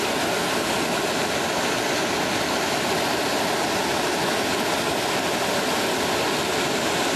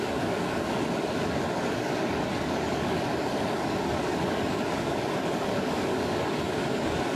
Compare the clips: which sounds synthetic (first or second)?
second